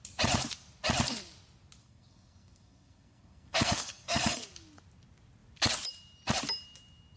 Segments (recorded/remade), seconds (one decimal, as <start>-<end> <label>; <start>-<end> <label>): 0.0-1.8 recorded; 1.8-4.5 remade; 4.5-7.2 recorded